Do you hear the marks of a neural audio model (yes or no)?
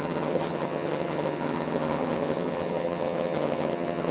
yes